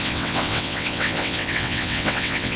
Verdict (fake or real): fake